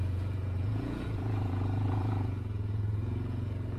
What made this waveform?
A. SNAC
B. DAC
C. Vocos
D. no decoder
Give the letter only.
C